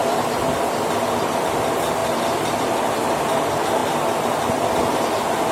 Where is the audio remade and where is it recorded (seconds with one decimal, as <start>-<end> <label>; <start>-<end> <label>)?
0.0-2.0 recorded; 2.0-2.8 remade; 2.8-5.5 recorded